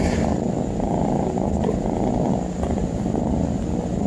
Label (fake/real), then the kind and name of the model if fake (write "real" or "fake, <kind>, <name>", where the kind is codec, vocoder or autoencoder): real